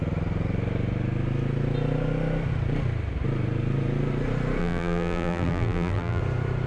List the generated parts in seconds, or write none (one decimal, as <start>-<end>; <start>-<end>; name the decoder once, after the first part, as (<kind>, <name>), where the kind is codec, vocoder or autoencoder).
4.6-6.2 (vocoder, BigVGAN v2)